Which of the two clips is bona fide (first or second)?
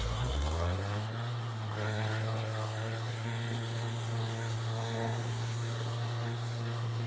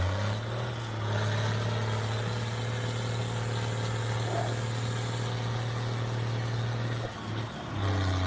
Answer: second